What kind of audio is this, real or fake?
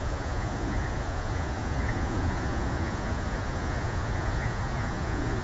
fake